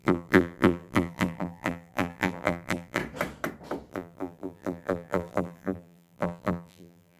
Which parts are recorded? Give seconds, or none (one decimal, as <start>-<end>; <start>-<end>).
3.0-3.9